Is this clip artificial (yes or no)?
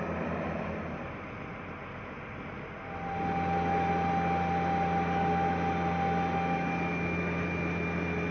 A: no